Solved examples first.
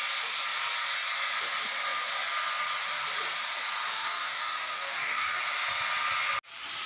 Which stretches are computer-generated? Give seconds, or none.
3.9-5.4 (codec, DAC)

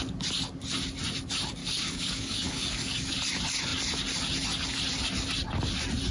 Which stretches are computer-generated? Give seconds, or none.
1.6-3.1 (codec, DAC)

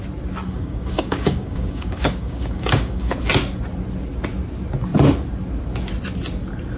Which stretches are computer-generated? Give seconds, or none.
0.4-3.3 (codec, DAC)